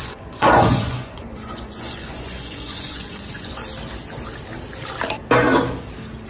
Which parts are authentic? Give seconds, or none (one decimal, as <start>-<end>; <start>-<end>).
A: 3.6-6.3